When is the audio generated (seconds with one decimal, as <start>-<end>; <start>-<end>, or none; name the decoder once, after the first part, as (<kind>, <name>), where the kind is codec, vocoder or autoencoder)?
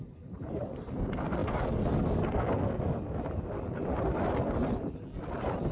none